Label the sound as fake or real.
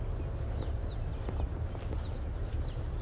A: real